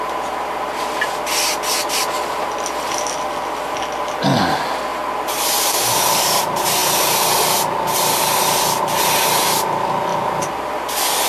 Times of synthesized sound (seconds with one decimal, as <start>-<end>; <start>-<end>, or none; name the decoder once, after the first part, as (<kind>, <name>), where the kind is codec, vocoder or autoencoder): 10.1-11.3 (vocoder, BigVGAN v2)